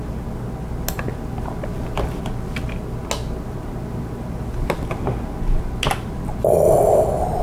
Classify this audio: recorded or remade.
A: recorded